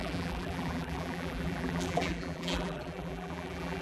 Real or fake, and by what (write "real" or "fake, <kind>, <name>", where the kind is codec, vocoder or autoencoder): fake, vocoder, BigVGAN v2